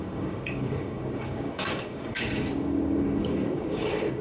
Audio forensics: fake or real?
fake